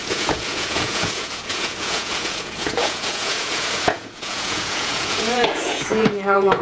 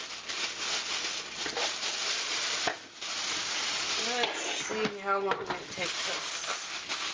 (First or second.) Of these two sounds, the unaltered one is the second